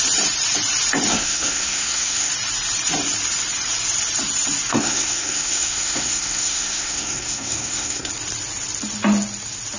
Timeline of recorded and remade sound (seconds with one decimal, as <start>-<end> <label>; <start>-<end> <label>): 0.0-1.1 recorded; 1.1-2.3 remade; 2.3-4.7 recorded; 4.7-8.1 remade; 8.1-9.8 recorded